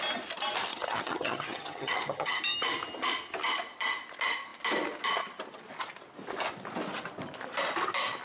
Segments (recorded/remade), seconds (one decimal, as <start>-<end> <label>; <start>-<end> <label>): 0.0-0.7 recorded; 0.7-2.4 remade; 2.4-8.2 recorded